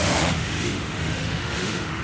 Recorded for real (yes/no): no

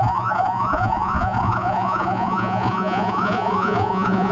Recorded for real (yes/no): no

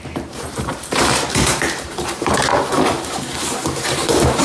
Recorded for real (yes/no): no